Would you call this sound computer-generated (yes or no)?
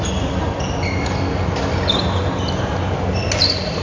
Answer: no